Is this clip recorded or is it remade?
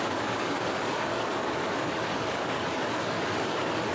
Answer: remade